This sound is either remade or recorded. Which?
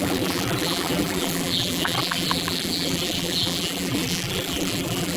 remade